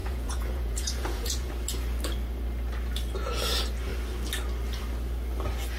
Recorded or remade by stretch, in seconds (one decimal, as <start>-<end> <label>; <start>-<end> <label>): 0.0-1.5 remade; 1.5-5.8 recorded